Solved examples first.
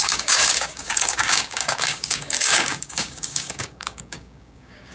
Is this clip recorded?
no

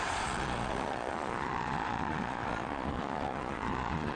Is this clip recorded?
no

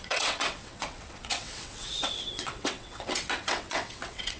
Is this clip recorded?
no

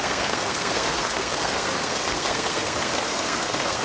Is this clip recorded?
no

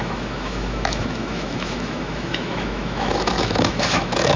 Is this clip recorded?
no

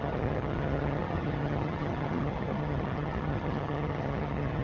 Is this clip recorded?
no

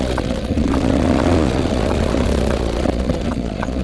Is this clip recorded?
no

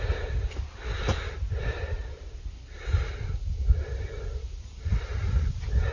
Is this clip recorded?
yes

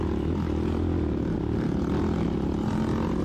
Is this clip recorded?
yes